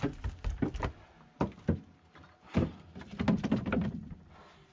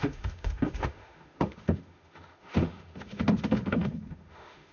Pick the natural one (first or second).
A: first